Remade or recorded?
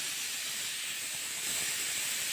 recorded